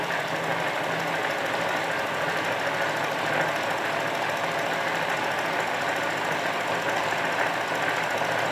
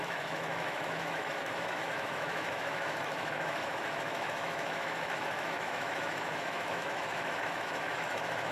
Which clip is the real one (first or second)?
first